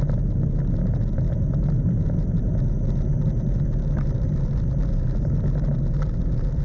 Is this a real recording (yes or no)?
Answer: yes